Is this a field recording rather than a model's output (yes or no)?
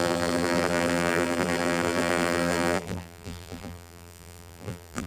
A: no